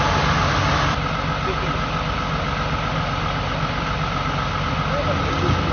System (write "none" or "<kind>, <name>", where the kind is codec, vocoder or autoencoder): none